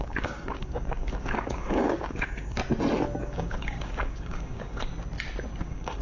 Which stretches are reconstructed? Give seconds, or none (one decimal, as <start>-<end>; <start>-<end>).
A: 0.0-2.6; 3.2-4.9; 5.6-6.0